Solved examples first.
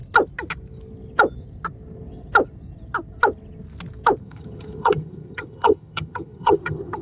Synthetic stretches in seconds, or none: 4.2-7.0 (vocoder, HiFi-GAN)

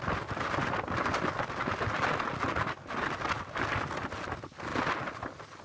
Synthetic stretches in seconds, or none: none

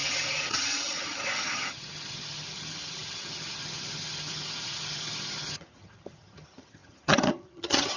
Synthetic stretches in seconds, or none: 0.0-8.0 (vocoder, HiFi-GAN)